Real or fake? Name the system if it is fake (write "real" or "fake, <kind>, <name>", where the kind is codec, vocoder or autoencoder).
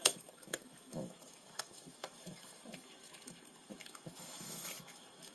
fake, autoencoder, DAC-VAE